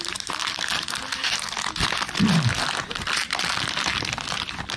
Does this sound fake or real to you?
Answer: fake